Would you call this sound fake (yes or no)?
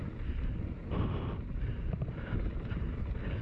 no